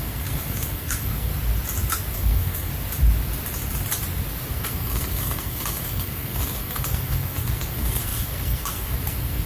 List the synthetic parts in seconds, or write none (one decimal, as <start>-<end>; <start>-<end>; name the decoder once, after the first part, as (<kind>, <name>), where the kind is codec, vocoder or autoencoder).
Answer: 0.0-1.3 (codec, SNAC); 2.1-2.7; 4.5-9.5